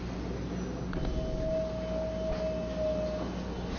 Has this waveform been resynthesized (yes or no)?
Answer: no